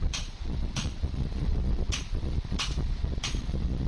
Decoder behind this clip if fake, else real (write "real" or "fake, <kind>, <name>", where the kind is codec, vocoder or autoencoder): fake, vocoder, Vocos